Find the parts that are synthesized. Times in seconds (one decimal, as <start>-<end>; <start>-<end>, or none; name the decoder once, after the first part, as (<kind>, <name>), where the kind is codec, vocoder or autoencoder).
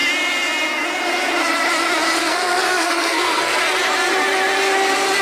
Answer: 2.2-3.6 (codec, SNAC)